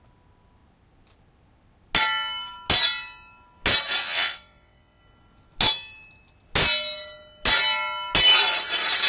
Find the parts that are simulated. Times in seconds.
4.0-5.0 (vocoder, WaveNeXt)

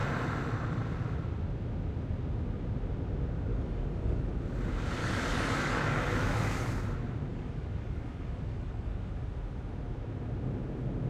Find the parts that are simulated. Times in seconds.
3.5-4.2 (codec, DAC); 5.0-6.7; 7.3-9.1

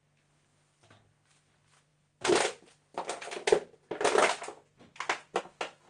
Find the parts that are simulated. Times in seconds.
none

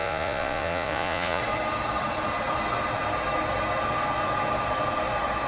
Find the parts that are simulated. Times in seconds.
0.0-1.4 (vocoder, Vocos)

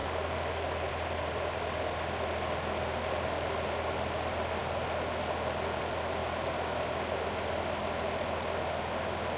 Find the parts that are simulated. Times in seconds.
none

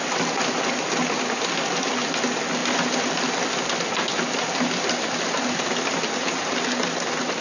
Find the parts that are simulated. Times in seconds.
none

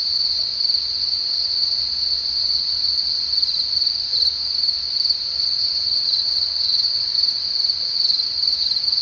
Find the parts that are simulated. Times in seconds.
0.0-0.5 (vocoder, WaveNeXt); 1.0-3.3; 5.4-7.1

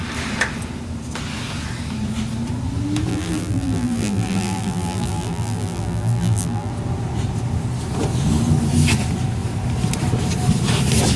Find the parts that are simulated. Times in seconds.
3.1-6.7 (vocoder, BigVGAN v2)